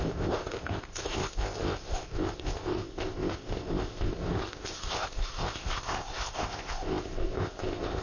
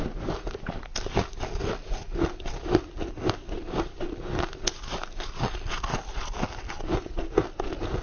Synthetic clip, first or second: first